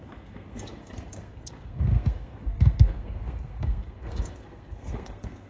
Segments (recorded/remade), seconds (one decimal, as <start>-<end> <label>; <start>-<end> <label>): 0.0-5.5 remade